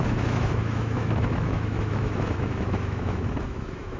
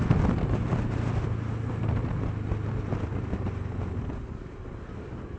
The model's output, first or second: first